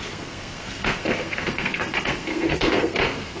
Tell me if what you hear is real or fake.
fake